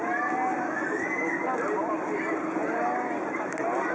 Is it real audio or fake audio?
real